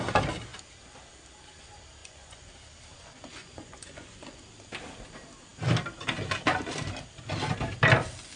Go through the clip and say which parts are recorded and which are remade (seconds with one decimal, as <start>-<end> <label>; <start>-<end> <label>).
0.0-2.0 recorded; 2.0-2.5 remade; 2.5-2.9 recorded; 2.9-4.4 remade; 4.4-8.4 recorded